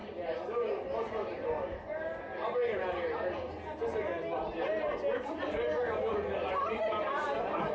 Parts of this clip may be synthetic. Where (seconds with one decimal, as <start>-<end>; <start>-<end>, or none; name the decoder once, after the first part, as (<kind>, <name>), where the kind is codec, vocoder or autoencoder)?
none